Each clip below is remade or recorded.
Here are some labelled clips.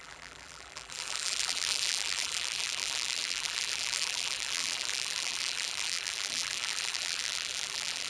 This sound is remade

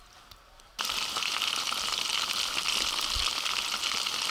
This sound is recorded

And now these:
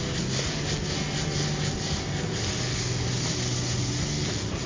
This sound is recorded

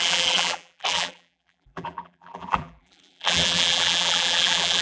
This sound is remade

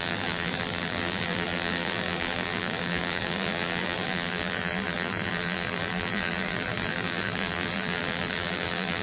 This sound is remade